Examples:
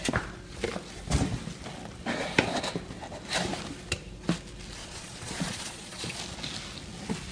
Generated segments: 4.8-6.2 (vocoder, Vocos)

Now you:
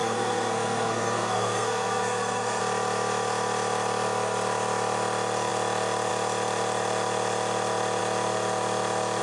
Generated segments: 0.0-2.6 (codec, SNAC)

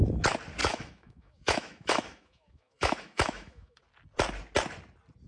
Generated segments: 0.6-3.8 (autoencoder, DAC-VAE)

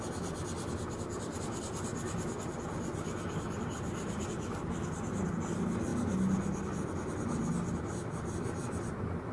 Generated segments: none

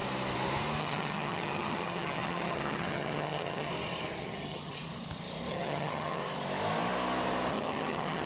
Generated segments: 0.8-3.7 (vocoder, HiFi-GAN); 4.2-4.8; 5.5-6.2; 7.5-8.3

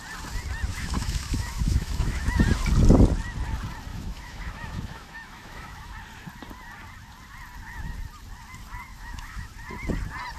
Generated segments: 0.7-2.4 (autoencoder, DAC-VAE); 3.9-5.9; 8.9-9.5

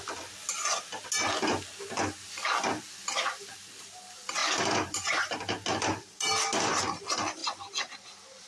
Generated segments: 4.4-5.3 (vocoder, BigVGAN v2); 5.7-6.3